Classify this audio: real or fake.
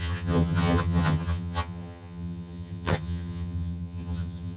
fake